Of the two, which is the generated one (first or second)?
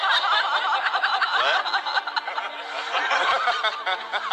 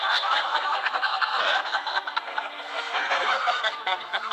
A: second